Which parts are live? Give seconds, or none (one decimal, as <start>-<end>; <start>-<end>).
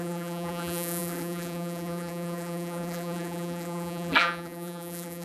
none